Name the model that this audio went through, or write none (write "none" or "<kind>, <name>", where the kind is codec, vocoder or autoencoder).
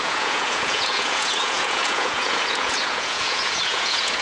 vocoder, Vocos